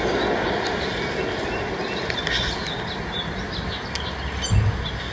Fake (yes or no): no